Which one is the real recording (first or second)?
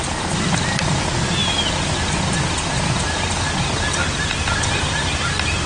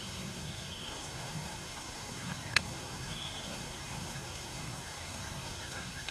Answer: first